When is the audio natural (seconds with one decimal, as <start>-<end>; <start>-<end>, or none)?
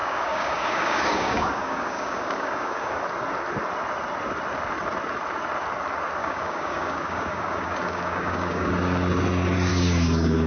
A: 3.0-6.2; 8.7-9.7